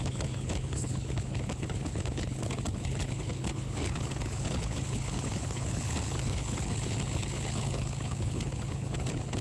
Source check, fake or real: fake